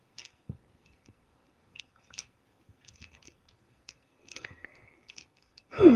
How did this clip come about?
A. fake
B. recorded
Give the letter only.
A